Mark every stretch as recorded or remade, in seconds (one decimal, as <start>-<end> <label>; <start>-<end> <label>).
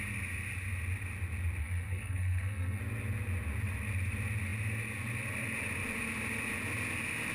0.0-1.6 recorded; 1.6-2.8 remade; 2.8-7.3 recorded